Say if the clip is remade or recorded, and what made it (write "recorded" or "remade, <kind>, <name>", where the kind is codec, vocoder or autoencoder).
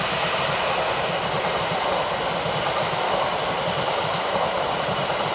recorded